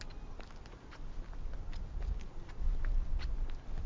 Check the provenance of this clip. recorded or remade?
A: recorded